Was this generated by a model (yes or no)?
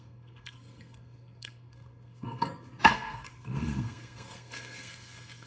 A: yes